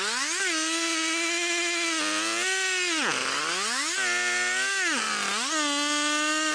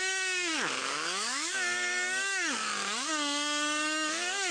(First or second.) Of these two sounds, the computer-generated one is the second